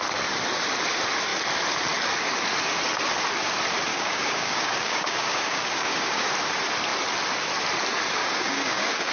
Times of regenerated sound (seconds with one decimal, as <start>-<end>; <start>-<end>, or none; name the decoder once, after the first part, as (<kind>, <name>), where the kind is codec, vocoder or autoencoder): 3.9-6.3 (codec, DAC); 8.2-9.1